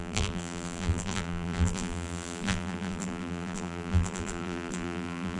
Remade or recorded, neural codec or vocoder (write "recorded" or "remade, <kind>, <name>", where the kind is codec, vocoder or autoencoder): remade, vocoder, BigVGAN v2